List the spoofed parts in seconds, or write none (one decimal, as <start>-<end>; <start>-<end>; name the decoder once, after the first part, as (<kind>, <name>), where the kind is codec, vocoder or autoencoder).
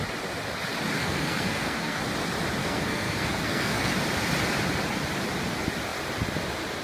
1.0-2.0 (codec, SNAC); 2.6-3.9